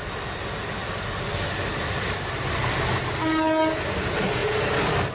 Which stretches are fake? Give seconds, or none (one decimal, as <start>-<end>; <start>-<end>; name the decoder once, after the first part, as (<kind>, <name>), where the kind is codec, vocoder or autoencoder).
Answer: none